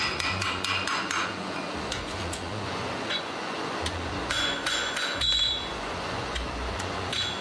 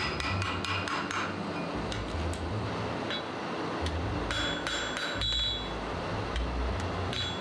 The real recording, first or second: second